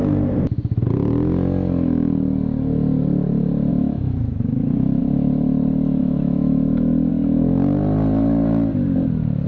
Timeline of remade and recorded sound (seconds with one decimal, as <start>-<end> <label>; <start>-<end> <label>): 0.0-3.7 recorded; 3.7-5.0 remade; 5.0-6.0 recorded; 6.0-7.1 remade; 7.1-9.5 recorded